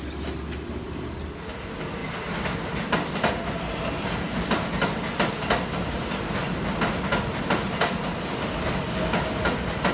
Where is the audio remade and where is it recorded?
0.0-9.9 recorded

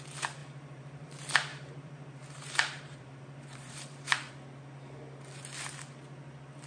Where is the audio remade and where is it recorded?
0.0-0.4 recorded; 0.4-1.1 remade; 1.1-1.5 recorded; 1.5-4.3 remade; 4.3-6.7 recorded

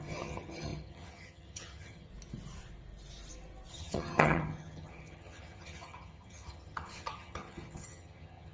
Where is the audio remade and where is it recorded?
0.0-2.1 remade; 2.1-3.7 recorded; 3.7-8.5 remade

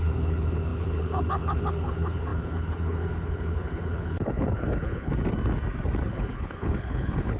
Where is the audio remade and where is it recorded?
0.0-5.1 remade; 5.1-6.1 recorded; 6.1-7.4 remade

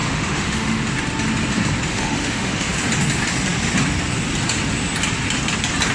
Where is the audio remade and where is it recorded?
0.0-0.8 remade; 0.8-1.9 recorded; 1.9-2.7 remade; 2.7-5.9 recorded